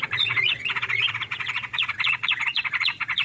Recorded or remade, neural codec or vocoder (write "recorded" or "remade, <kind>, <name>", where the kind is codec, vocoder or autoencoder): remade, vocoder, Vocos